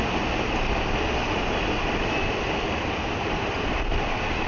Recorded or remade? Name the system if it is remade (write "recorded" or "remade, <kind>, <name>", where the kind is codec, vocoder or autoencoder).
recorded